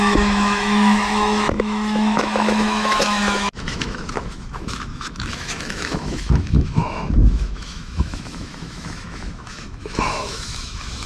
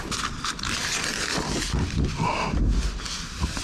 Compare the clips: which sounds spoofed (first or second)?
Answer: first